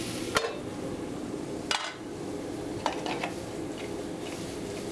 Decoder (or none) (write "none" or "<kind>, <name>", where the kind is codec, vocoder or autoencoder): none